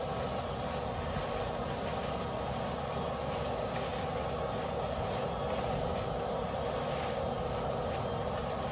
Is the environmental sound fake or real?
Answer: real